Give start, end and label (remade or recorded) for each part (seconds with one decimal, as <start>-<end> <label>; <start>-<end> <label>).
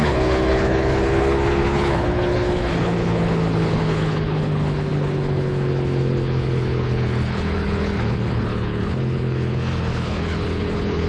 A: 0.0-11.1 remade